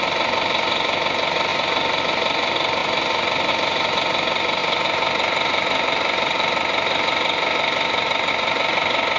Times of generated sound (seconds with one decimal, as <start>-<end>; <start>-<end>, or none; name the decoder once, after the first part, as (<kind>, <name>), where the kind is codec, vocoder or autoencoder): 4.6-8.3 (vocoder, BigVGAN v2)

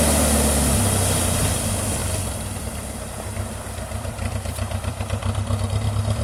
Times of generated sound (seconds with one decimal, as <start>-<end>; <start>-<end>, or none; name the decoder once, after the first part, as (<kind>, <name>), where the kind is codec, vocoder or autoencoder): 2.0-5.6 (vocoder, BigVGAN v2)

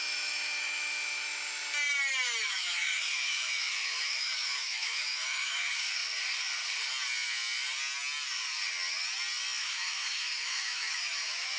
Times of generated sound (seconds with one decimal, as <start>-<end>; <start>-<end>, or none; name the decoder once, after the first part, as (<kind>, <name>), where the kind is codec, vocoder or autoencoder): 0.0-1.6 (autoencoder, DAC-VAE); 2.4-6.0; 9.6-11.6

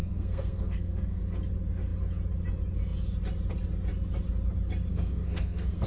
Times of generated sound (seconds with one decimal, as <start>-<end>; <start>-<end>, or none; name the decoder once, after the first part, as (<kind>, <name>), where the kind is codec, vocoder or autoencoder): 0.0-1.2 (codec, SNAC); 4.9-5.9

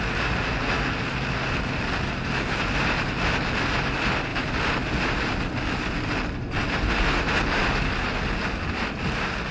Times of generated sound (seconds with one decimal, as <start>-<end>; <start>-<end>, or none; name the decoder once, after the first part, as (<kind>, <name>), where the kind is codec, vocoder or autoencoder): none